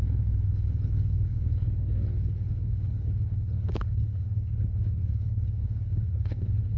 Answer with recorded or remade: remade